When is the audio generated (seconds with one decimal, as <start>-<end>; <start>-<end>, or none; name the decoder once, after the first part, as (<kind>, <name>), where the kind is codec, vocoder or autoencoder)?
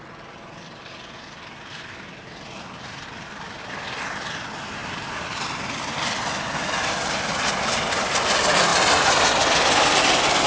none